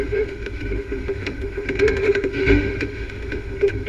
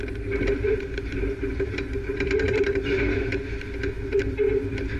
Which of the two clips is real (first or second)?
second